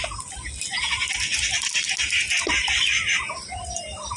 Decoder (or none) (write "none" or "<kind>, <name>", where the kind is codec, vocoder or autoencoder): none